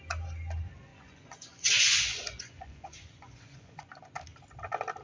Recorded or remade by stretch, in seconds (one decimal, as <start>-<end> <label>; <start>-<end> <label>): 0.0-0.9 recorded; 0.9-3.9 remade; 3.9-5.0 recorded